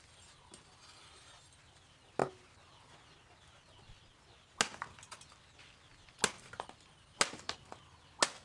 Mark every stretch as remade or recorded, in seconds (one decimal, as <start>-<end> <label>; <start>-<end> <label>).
0.0-8.4 recorded